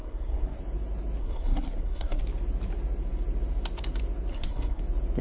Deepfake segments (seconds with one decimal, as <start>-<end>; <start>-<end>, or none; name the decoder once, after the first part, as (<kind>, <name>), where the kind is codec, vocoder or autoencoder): 0.0-0.6 (codec, SNAC); 1.2-2.2; 4.3-4.8